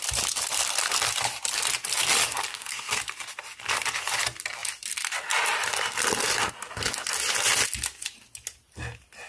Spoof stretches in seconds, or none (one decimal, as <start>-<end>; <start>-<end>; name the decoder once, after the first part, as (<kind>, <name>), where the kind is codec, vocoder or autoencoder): 2.5-3.0 (codec, SNAC)